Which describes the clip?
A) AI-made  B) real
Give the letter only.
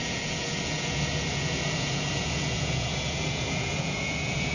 A